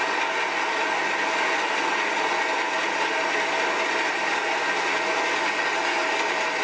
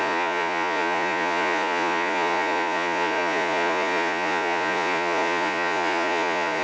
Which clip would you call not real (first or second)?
second